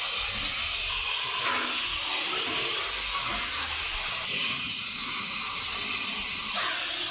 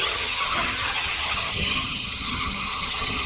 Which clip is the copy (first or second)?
second